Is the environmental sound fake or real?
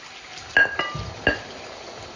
real